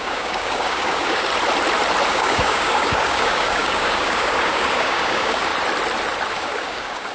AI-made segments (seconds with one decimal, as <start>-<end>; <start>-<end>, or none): 0.0-1.3; 2.1-5.5; 6.3-7.1